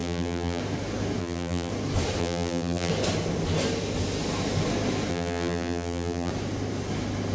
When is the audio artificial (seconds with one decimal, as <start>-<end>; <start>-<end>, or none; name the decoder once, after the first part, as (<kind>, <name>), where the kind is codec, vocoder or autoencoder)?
0.0-0.6 (vocoder, BigVGAN v2); 1.2-1.7; 2.2-2.9; 5.1-6.3